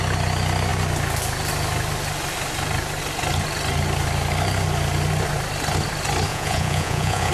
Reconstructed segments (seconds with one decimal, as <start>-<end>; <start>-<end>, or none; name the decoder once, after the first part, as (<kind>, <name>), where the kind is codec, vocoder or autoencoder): 6.3-7.3 (vocoder, Vocos)